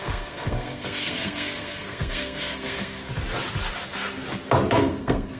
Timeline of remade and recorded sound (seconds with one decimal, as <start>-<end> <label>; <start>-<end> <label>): 0.0-3.1 remade; 3.1-4.8 recorded; 4.8-5.4 remade